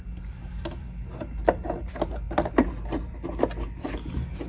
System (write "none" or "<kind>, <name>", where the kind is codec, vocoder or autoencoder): none